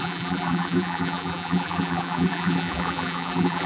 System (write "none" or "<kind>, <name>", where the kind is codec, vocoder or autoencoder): vocoder, BigVGAN v2